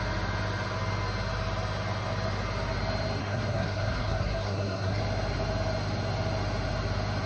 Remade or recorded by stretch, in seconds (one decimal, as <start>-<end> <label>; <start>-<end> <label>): 0.0-3.2 recorded; 3.2-5.0 remade; 5.0-7.3 recorded